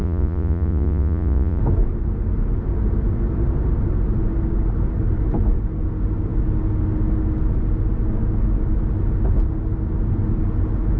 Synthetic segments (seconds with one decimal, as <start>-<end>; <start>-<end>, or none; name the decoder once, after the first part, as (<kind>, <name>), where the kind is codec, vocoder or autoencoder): 0.0-1.6 (vocoder, Vocos)